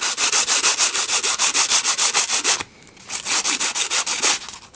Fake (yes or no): no